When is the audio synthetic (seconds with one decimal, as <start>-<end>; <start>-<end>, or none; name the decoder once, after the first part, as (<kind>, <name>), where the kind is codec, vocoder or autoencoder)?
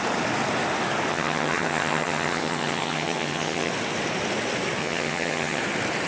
1.1-3.7 (vocoder, HiFi-GAN); 4.8-5.6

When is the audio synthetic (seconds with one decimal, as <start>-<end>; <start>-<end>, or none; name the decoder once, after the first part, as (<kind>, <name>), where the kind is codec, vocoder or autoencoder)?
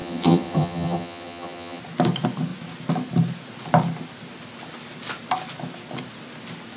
0.0-1.8 (vocoder, HiFi-GAN)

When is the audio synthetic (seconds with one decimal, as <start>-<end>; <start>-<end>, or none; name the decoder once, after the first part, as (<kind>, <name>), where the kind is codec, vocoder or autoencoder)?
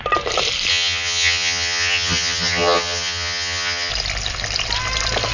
0.7-3.9 (vocoder, HiFi-GAN)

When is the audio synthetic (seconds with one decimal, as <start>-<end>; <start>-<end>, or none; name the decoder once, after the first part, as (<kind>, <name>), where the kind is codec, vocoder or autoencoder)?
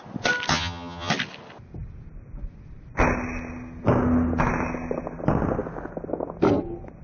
0.5-1.1 (vocoder, HiFi-GAN)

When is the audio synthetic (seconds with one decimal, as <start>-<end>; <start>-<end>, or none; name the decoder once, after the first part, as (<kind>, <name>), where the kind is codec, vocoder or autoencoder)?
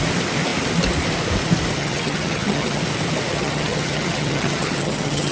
1.8-2.8 (vocoder, HiFi-GAN); 3.3-5.3